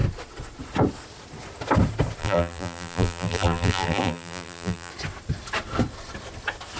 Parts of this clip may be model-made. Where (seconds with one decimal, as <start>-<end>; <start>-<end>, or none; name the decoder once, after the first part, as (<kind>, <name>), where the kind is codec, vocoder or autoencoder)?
2.2-4.9 (vocoder, BigVGAN v2)